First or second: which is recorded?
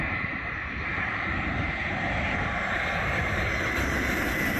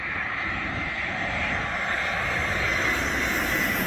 second